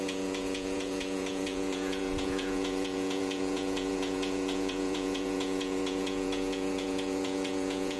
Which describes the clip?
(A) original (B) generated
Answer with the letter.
B